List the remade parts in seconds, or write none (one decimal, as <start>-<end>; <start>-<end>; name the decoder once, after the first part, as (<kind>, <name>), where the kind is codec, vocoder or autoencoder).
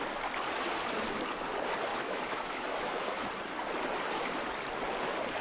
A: 1.9-3.3 (autoencoder, DAC-VAE)